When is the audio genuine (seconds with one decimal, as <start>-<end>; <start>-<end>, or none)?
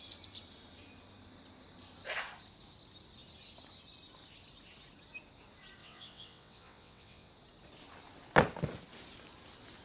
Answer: 0.0-5.8; 7.3-9.8